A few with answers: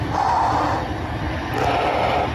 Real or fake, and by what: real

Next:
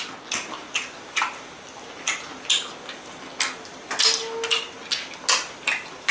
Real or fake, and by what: real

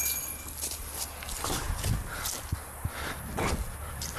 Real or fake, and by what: real